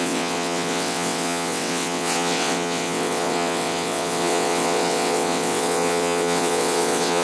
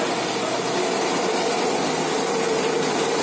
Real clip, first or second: second